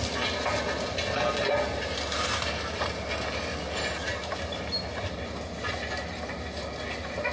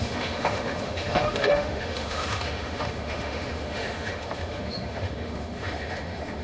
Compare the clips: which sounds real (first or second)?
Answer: first